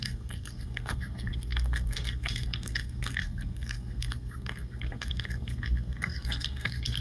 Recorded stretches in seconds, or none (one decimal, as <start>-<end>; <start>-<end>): none